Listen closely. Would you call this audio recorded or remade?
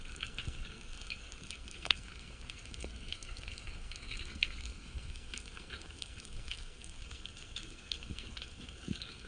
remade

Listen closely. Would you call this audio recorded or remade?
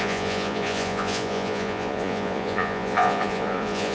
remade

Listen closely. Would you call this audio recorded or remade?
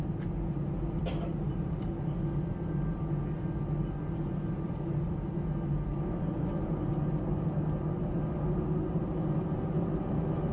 recorded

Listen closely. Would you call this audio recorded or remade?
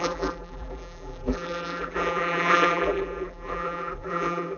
remade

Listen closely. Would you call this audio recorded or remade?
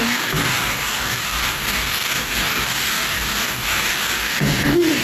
remade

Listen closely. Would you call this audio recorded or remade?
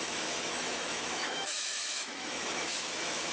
remade